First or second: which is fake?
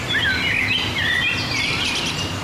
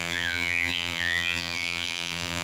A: second